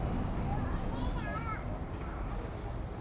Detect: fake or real real